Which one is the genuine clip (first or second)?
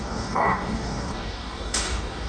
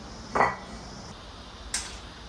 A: second